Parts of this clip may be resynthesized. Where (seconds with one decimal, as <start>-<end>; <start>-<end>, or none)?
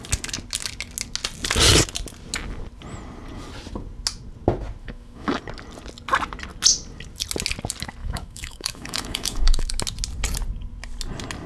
4.8-5.4; 8.0-9.8